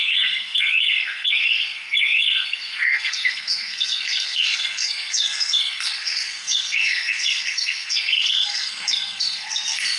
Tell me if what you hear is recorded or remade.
remade